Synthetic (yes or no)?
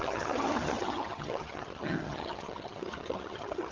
yes